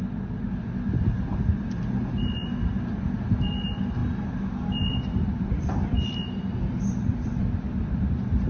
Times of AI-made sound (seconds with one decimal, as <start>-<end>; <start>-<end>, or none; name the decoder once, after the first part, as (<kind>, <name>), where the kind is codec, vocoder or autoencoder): 4.0-7.4 (vocoder, BigVGAN v2)